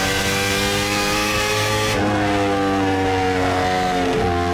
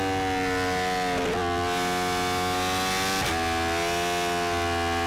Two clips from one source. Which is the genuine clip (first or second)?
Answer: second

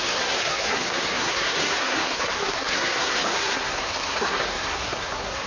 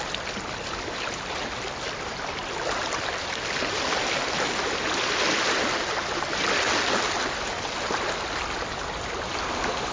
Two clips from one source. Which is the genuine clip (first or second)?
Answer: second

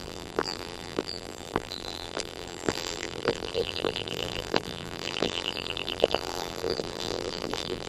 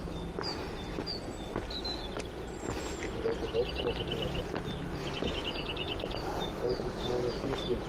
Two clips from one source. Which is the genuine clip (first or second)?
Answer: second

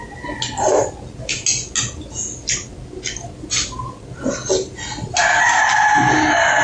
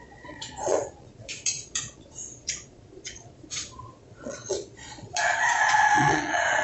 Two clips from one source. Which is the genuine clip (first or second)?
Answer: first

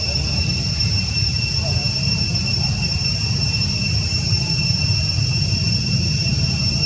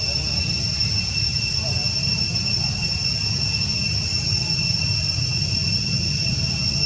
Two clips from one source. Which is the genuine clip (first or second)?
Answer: second